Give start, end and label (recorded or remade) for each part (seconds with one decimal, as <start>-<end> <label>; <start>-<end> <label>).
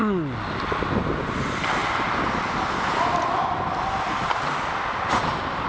0.0-5.7 recorded